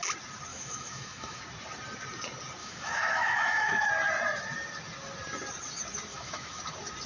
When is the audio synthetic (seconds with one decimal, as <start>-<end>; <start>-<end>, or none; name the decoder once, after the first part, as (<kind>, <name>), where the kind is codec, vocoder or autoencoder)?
0.5-1.4 (autoencoder, DAC-VAE); 2.6-3.9; 6.1-6.6